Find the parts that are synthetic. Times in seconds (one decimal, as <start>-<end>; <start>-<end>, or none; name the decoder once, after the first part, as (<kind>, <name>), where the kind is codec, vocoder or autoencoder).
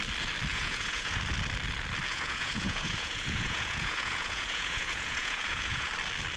0.5-1.2 (vocoder, Vocos); 2.1-5.9